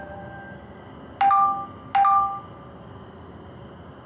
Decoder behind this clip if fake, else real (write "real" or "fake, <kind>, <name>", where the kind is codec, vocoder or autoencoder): real